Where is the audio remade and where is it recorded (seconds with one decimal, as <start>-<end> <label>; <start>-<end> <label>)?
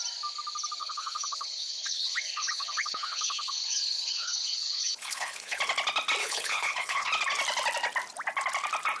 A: 0.0-0.8 recorded; 0.8-5.6 remade; 5.6-6.2 recorded; 6.2-7.1 remade; 7.1-9.0 recorded